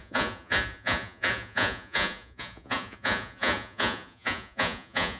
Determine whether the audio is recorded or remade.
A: remade